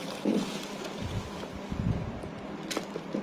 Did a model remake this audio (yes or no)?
no